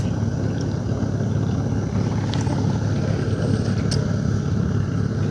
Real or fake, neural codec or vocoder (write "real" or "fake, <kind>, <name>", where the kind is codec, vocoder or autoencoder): real